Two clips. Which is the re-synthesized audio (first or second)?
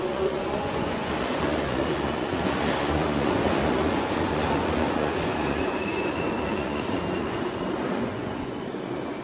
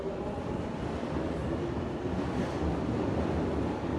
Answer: first